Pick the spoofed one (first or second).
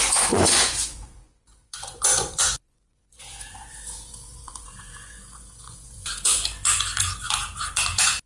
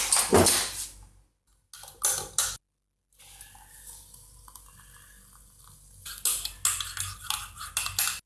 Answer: first